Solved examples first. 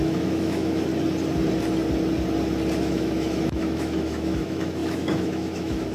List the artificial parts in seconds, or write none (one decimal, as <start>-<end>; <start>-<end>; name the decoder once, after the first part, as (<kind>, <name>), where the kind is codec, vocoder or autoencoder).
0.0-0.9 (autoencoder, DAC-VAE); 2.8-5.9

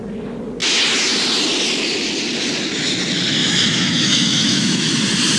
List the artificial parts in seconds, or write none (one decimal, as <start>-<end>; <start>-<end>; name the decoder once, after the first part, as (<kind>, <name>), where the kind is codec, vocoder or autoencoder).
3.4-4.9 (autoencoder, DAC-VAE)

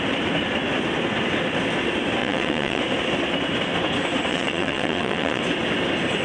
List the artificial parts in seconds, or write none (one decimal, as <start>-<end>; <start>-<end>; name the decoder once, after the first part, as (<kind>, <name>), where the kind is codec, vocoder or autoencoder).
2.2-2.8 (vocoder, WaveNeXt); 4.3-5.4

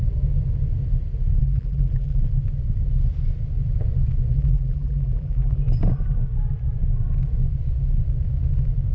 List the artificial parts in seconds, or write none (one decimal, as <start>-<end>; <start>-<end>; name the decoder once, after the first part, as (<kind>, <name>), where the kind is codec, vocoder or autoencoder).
1.4-2.2 (vocoder, BigVGAN v2); 4.3-5.6